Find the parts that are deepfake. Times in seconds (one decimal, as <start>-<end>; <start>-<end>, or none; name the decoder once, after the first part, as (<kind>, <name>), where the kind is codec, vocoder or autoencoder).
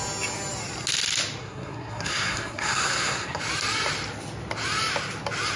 1.4-3.4 (codec, SNAC)